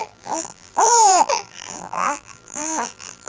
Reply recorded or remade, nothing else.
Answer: remade